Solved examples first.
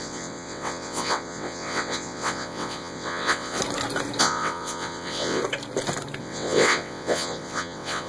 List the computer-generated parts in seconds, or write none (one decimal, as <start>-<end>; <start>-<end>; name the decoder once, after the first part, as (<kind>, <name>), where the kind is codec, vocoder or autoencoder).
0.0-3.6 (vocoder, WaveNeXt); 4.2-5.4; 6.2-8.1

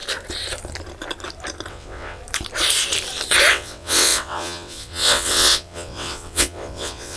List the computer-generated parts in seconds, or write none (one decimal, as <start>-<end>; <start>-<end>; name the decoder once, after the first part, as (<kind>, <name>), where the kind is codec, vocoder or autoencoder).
1.7-2.2 (vocoder, WaveNeXt); 3.5-7.2

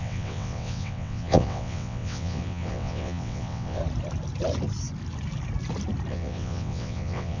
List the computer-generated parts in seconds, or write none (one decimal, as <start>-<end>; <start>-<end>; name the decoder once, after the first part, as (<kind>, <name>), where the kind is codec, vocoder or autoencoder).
0.0-3.8 (vocoder, WaveNeXt); 6.1-7.4

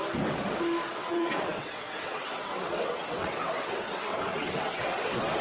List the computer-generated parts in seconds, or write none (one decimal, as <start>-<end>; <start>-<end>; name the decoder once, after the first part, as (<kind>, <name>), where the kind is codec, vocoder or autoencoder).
0.9-5.4 (vocoder, WaveNeXt)

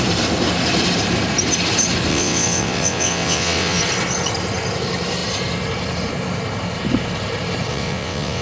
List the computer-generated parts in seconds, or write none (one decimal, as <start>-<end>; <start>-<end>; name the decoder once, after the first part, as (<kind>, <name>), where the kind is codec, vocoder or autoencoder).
2.1-3.8 (vocoder, WaveNeXt); 7.7-8.4

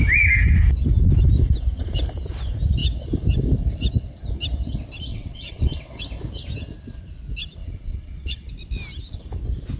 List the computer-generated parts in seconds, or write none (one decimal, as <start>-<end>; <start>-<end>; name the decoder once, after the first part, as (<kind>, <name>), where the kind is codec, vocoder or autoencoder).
5.1-6.0 (vocoder, WaveNeXt); 7.6-8.5